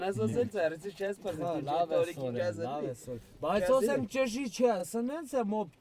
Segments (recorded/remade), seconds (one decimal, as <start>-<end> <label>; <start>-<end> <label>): 0.0-2.4 remade; 2.4-5.8 recorded